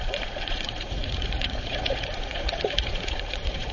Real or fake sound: fake